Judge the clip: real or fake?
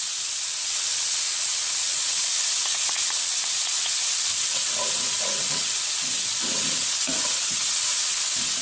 fake